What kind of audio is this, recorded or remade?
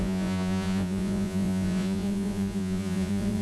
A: remade